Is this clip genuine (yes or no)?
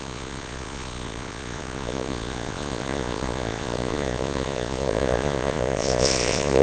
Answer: no